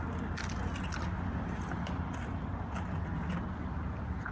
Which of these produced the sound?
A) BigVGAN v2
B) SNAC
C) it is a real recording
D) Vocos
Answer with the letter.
C